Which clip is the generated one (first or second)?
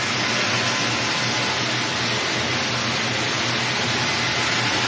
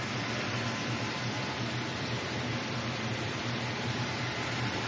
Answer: second